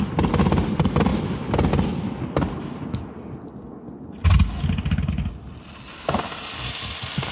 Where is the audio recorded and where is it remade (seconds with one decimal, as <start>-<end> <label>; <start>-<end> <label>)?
0.0-7.3 recorded